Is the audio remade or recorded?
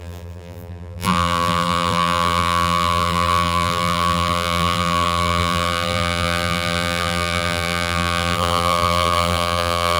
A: remade